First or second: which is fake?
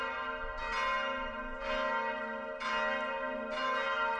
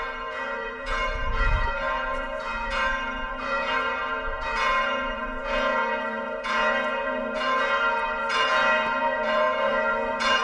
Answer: second